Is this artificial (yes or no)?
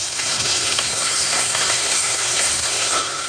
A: yes